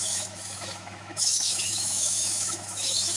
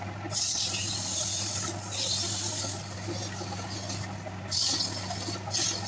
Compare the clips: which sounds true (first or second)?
second